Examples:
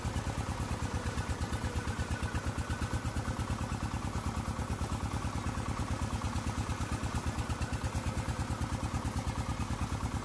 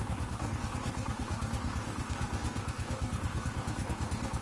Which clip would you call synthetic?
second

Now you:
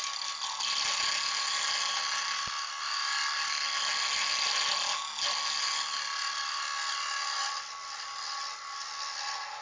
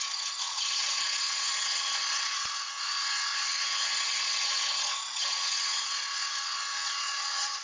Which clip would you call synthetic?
second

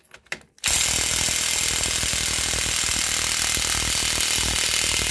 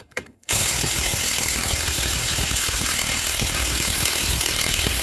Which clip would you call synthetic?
second